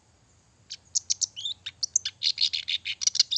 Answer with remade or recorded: recorded